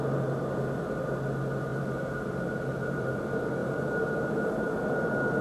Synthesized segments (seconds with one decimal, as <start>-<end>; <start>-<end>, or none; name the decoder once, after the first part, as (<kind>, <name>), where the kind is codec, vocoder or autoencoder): 1.7-3.2 (vocoder, BigVGAN v2); 3.6-4.8